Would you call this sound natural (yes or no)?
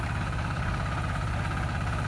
yes